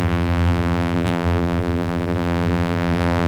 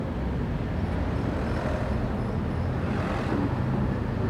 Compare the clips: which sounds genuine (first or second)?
second